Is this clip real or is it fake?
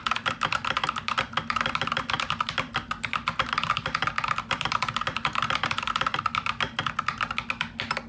real